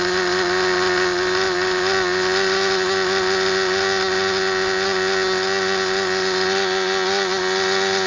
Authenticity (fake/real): real